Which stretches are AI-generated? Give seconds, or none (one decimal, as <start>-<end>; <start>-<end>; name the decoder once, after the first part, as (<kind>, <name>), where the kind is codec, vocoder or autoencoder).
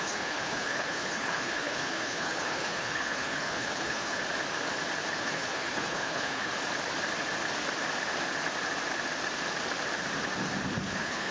0.0-4.2 (codec, HILCodec); 5.1-6.5; 10.8-11.3